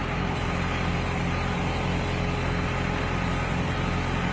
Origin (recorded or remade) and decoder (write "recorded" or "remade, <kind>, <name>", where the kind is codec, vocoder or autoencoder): remade, vocoder, BigVGAN v2